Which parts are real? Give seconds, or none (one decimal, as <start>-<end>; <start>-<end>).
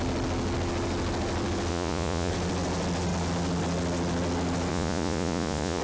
0.0-1.7; 2.3-4.7